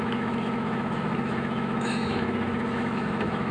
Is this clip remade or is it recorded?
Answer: remade